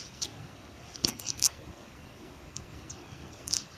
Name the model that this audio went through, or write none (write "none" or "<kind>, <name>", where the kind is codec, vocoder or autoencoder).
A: codec, SNAC